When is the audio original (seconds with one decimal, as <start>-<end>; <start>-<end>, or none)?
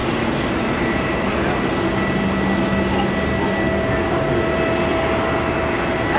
1.3-6.2